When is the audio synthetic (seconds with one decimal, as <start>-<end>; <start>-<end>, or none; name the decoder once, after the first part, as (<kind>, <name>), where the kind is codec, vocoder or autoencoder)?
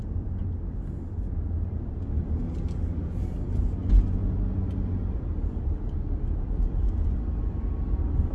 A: none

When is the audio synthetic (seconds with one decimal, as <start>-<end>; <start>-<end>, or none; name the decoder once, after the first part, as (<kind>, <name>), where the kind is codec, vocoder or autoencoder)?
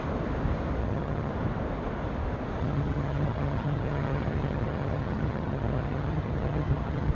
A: 0.8-1.3 (vocoder, HiFi-GAN); 2.6-7.1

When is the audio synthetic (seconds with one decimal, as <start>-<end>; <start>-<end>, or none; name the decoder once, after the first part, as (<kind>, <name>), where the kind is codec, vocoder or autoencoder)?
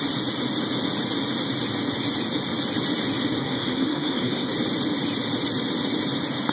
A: 3.4-4.5 (codec, SNAC)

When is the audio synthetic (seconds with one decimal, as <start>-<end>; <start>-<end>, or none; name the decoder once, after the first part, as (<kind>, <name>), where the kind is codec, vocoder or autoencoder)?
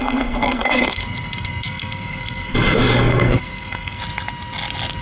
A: 0.0-4.0 (codec, SNAC)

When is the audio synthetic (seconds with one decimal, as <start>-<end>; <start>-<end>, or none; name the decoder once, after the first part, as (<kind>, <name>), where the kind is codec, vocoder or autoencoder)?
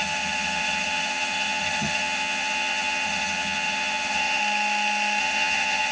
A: 0.0-4.4 (vocoder, HiFi-GAN); 5.2-5.9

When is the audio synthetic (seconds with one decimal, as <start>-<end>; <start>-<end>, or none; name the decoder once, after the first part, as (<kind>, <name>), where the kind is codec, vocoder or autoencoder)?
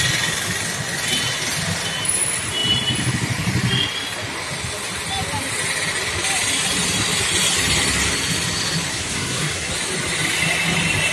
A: 8.9-9.7 (codec, SNAC)